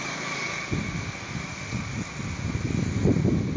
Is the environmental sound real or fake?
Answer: real